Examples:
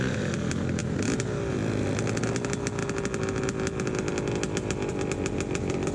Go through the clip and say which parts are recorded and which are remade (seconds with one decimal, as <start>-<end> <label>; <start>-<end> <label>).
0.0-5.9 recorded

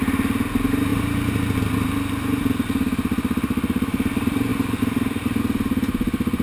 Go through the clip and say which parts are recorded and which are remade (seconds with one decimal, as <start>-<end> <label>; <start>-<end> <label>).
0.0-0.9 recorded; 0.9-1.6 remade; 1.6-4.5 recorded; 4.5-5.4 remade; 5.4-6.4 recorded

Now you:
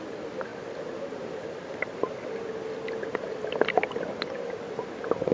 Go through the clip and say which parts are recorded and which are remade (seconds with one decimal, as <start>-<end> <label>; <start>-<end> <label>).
0.0-5.3 recorded

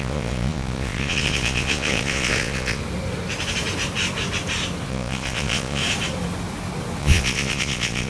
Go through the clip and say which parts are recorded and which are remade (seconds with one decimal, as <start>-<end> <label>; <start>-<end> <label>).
0.0-2.8 remade; 2.8-4.9 recorded; 4.9-5.8 remade; 5.8-7.0 recorded; 7.0-8.1 remade

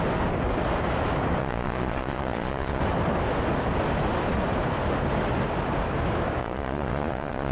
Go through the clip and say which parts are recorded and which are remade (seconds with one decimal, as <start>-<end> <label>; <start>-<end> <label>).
0.0-1.4 recorded; 1.4-2.8 remade; 2.8-6.4 recorded; 6.4-7.5 remade

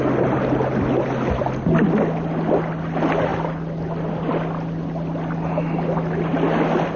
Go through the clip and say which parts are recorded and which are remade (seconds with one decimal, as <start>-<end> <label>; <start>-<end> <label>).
0.0-7.0 recorded